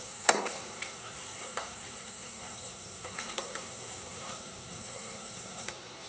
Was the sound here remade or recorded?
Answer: remade